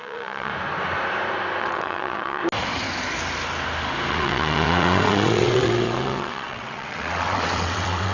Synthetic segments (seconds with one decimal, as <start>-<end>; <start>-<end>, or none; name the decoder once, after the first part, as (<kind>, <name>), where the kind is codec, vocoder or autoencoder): 0.0-0.5 (vocoder, WaveNeXt); 1.6-2.4; 4.1-8.1